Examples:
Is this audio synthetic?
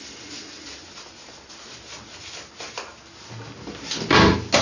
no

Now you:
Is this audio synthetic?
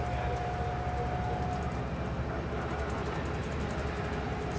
no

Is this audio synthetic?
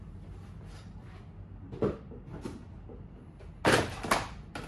no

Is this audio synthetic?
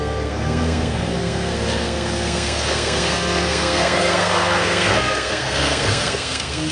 yes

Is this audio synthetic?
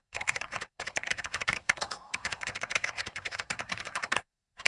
yes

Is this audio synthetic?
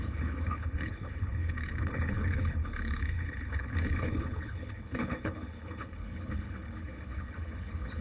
yes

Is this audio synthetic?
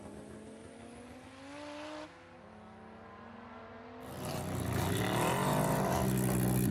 no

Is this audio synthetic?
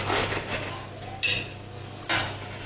no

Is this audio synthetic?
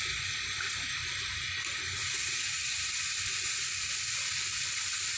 yes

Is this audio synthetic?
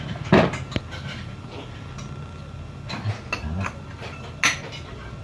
no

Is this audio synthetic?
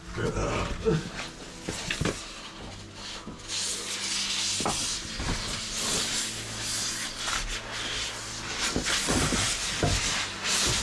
no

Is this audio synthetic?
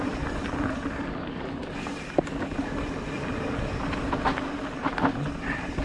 no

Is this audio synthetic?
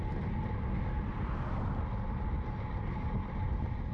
no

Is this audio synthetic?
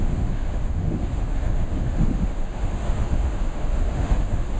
yes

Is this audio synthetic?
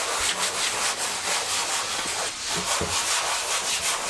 no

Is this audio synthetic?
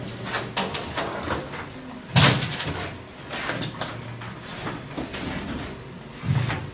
no